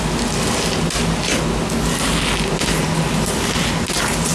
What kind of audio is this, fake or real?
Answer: real